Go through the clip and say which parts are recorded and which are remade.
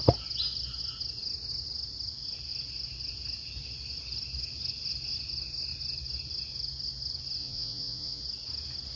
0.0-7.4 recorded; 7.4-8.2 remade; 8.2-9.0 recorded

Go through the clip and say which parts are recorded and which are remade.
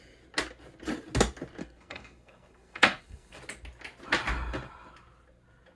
0.0-1.6 recorded; 1.6-3.4 remade; 3.4-5.8 recorded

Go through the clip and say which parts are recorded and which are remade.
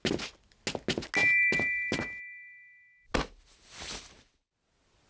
0.0-5.1 recorded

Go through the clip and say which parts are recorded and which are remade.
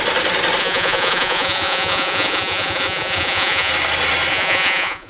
0.0-0.6 recorded; 0.6-3.7 remade; 3.7-4.3 recorded; 4.3-5.1 remade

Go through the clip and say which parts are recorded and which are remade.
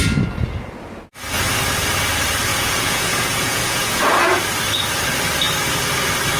0.0-2.5 recorded; 2.5-4.4 remade; 4.4-6.4 recorded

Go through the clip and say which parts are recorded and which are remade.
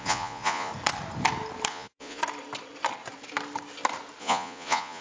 0.0-0.7 remade; 0.7-1.7 recorded; 1.7-2.2 remade; 2.2-4.2 recorded; 4.2-5.0 remade